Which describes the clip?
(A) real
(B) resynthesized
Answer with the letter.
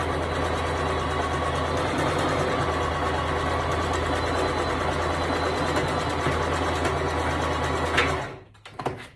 A